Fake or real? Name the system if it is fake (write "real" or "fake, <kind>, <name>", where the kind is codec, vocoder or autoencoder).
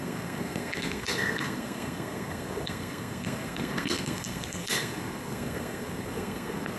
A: fake, codec, SNAC